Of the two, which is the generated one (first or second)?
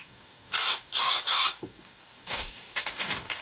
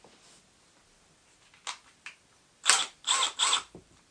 first